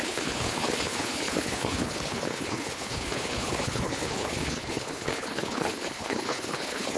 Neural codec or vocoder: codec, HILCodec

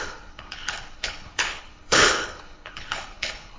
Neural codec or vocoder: codec, HILCodec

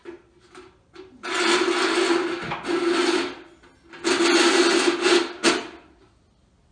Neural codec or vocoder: none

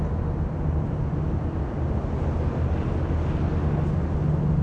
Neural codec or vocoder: none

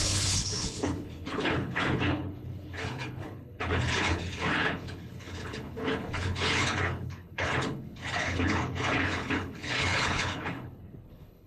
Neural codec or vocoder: codec, HILCodec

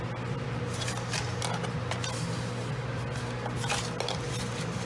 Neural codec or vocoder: none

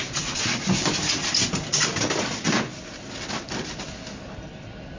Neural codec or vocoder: none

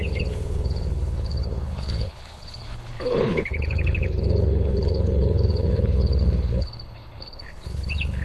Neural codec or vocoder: codec, HILCodec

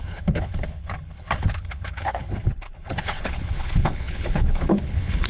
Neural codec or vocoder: codec, HILCodec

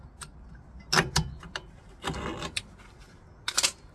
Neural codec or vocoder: none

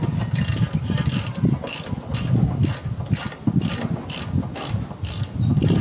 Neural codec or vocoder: none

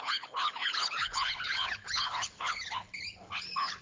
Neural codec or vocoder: codec, HILCodec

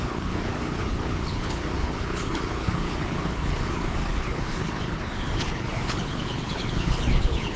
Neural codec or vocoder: codec, HILCodec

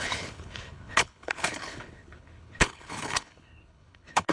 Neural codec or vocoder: codec, HILCodec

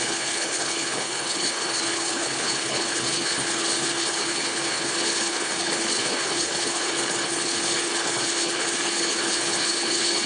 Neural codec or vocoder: codec, HILCodec